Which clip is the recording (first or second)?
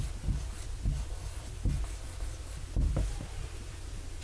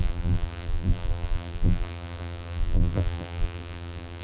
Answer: first